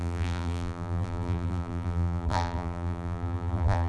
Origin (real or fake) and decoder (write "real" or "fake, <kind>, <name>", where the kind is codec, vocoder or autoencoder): fake, vocoder, BigVGAN v2